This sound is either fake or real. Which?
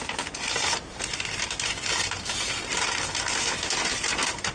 real